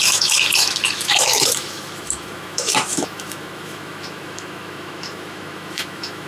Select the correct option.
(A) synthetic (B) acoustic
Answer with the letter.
A